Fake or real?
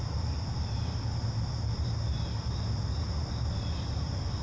real